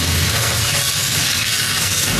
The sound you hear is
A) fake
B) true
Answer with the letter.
A